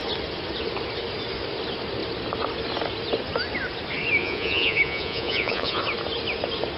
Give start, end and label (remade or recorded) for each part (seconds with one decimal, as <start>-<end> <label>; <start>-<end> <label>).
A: 0.0-4.2 recorded; 4.2-5.8 remade; 5.8-6.8 recorded